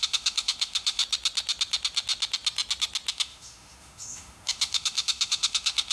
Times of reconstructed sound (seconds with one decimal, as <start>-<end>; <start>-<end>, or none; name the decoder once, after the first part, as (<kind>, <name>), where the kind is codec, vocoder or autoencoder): 0.0-1.0 (autoencoder, DAC-VAE); 3.1-5.9